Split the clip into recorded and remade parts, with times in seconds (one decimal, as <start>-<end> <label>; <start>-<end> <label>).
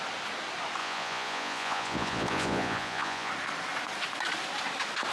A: 0.0-0.8 recorded; 0.8-3.3 remade; 3.3-5.1 recorded